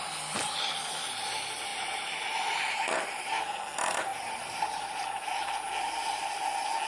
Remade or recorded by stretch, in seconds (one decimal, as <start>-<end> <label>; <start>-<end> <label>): 0.0-1.7 recorded; 1.7-3.6 remade; 3.6-4.1 recorded; 4.1-5.5 remade; 5.5-6.9 recorded

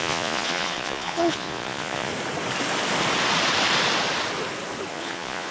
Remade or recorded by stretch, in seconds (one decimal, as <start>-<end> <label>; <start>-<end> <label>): 0.0-2.1 remade; 2.1-4.9 recorded; 4.9-5.5 remade

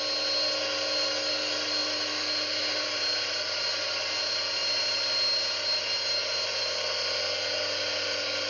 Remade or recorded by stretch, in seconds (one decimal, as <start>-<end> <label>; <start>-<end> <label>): 0.0-8.5 recorded

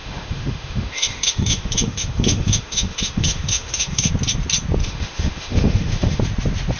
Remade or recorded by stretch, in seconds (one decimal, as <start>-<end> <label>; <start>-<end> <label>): 0.0-4.1 remade; 4.1-4.8 recorded; 4.8-6.2 remade; 6.2-6.8 recorded